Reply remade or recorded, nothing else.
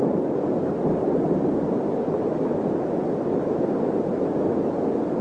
recorded